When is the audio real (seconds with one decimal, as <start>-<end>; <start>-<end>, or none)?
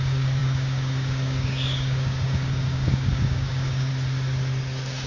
3.9-5.1